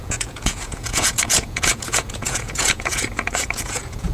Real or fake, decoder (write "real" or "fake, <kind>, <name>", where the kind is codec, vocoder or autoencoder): fake, vocoder, Vocos